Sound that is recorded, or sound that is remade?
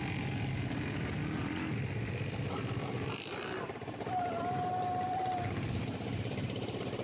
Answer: remade